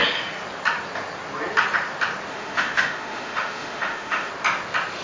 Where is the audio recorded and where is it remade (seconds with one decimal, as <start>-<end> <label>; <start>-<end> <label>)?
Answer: 0.0-2.3 recorded; 2.3-4.3 remade; 4.3-5.0 recorded